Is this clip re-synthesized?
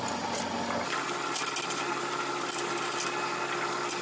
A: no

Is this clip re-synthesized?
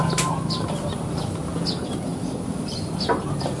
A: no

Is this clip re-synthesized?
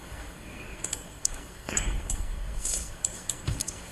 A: yes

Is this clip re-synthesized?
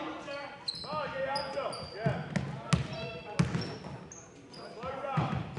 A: no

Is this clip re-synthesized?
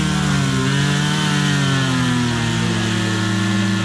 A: no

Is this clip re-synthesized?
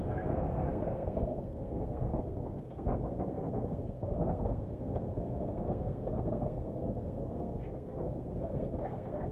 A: yes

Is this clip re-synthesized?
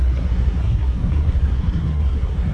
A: yes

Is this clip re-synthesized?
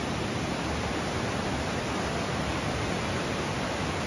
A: no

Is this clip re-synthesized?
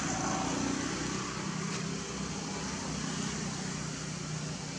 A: no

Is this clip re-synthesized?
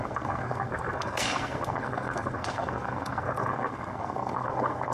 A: yes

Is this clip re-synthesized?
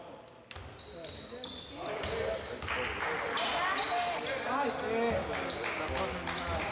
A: no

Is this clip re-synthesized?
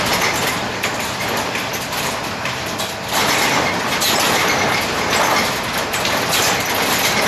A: no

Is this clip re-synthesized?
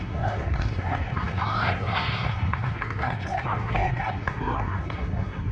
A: yes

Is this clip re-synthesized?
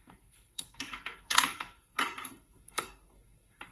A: yes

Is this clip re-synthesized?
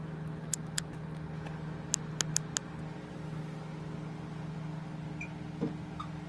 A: no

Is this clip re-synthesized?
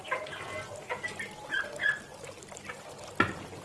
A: no